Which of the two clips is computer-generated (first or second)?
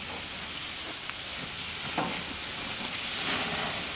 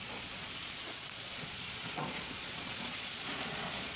second